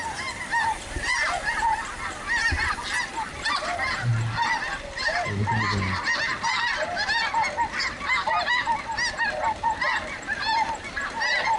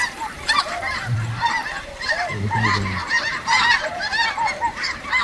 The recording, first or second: first